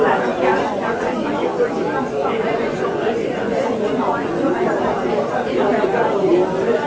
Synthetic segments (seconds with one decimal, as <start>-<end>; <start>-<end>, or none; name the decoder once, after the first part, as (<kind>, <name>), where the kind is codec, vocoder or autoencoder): 0.5-1.7 (vocoder, Vocos); 2.2-4.8